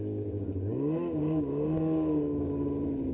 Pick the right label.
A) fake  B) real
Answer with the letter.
A